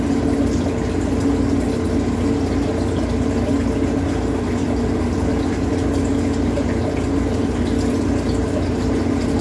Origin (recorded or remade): recorded